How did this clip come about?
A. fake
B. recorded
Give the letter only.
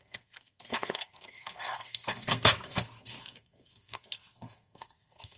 A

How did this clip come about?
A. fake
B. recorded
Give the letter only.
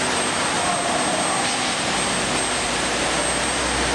B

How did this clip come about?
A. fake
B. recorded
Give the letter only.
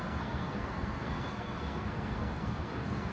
A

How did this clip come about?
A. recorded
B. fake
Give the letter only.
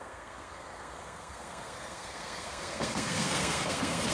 B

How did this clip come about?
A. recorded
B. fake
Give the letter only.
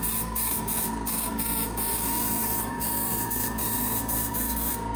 B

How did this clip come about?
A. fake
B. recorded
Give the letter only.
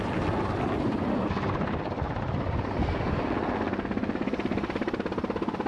B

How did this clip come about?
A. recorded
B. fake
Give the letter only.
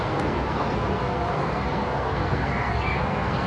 B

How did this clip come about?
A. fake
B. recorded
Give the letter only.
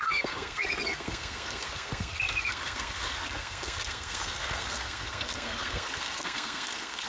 A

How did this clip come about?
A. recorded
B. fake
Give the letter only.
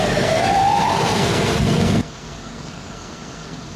B